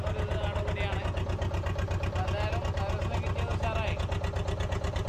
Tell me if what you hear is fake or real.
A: real